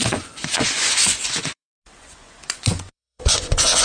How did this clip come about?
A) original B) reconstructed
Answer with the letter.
B